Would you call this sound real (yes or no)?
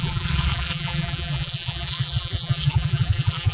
no